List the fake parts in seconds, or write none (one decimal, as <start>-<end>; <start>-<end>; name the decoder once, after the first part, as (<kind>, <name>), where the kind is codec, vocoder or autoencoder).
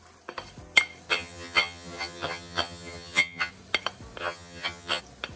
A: 1.1-3.5 (vocoder, HiFi-GAN); 4.2-5.0